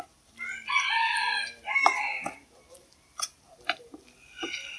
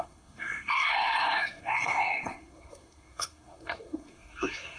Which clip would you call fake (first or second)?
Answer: second